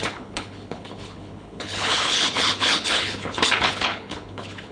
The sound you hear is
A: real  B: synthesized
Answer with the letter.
B